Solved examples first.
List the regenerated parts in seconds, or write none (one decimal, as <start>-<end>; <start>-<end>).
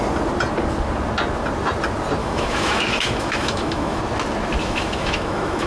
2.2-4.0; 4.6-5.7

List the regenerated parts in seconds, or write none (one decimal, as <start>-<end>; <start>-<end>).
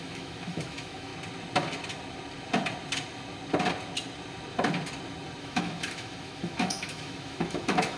0.0-1.1; 5.4-8.0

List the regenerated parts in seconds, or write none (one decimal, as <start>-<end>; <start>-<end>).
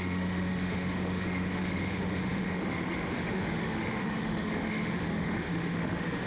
0.0-6.3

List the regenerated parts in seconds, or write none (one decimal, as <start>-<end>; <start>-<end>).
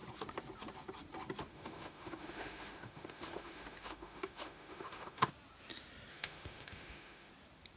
1.5-5.3; 6.1-7.3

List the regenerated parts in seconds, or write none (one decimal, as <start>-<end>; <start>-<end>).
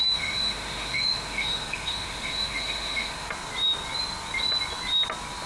0.0-3.3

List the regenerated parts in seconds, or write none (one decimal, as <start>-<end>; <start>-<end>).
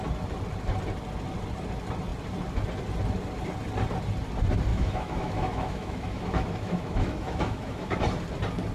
4.7-8.0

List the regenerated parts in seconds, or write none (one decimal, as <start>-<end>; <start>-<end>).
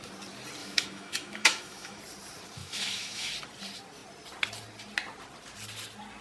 0.6-2.0; 2.6-3.3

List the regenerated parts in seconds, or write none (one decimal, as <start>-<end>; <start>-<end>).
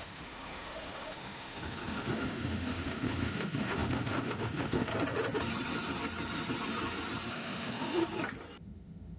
0.0-4.9; 7.3-8.0; 8.6-9.2